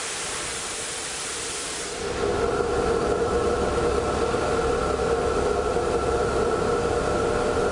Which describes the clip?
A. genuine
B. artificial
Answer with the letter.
A